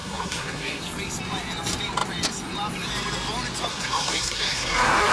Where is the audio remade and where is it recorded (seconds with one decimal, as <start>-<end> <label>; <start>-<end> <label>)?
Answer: 0.0-0.8 remade; 0.8-3.7 recorded; 3.7-5.1 remade